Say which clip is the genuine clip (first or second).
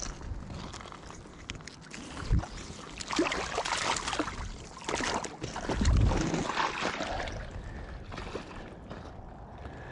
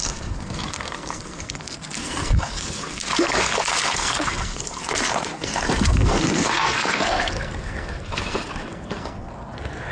first